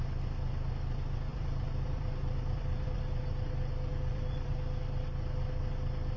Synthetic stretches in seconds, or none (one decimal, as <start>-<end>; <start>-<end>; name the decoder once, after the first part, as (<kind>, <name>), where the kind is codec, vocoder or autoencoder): 1.3-3.0 (vocoder, BigVGAN v2); 3.9-4.5